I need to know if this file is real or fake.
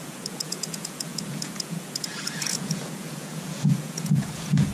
fake